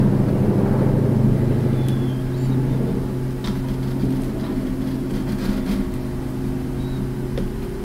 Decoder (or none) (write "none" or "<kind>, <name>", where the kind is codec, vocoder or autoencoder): none